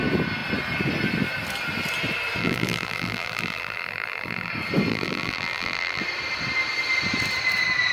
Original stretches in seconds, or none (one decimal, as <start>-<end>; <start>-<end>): 0.0-2.4; 4.5-4.9; 6.0-7.9